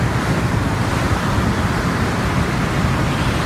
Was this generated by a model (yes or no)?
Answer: no